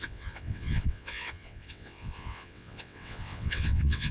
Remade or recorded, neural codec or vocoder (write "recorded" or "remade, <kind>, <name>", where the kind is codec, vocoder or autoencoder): remade, vocoder, WaveNeXt